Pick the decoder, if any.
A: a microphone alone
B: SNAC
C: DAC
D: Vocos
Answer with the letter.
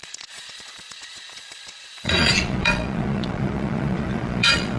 D